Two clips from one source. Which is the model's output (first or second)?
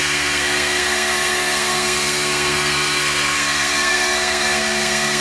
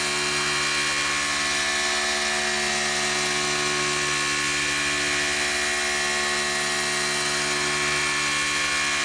first